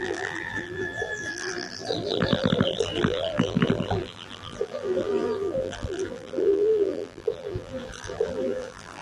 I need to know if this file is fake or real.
fake